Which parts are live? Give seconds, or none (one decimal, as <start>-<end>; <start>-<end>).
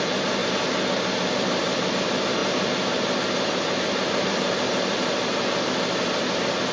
0.0-6.7